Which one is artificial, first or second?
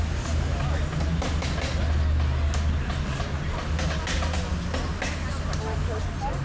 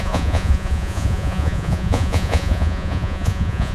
second